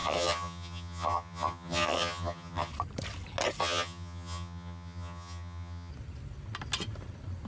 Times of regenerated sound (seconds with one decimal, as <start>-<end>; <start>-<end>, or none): 0.0-2.7; 3.6-5.9